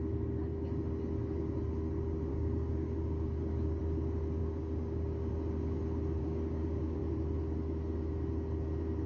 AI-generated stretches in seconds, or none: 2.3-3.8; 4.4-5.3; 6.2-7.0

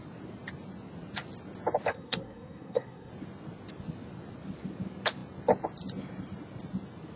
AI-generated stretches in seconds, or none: 1.9-3.1

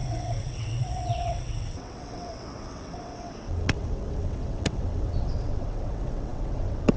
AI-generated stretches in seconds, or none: 0.0-7.0

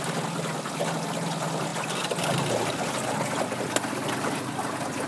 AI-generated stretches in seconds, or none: none

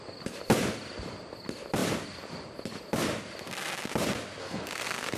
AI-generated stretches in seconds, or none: 4.4-5.2

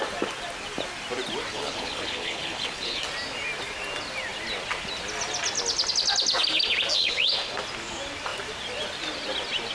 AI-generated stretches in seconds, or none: 1.5-3.0; 7.0-7.6